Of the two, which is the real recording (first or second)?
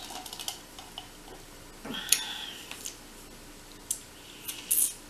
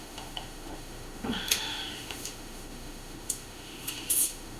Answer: first